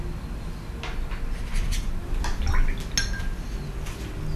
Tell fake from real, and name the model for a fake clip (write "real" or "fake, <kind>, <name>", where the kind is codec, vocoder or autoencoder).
real